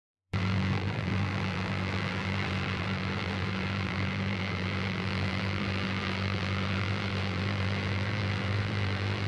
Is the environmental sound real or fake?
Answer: fake